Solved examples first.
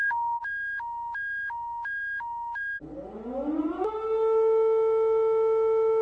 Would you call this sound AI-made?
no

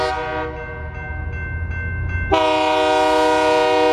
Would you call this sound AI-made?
no